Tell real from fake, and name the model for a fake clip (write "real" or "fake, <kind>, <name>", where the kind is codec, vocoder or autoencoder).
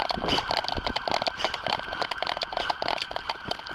fake, vocoder, BigVGAN v2